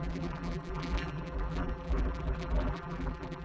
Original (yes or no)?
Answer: no